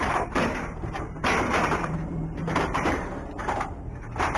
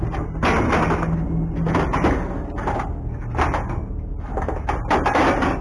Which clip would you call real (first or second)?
second